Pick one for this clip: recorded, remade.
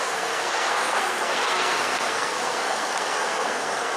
remade